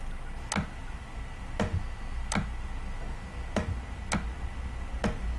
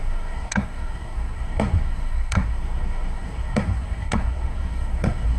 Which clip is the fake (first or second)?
second